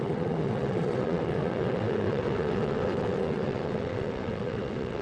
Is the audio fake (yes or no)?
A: yes